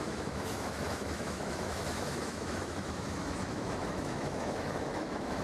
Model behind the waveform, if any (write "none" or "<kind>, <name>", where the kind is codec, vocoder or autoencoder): autoencoder, DAC-VAE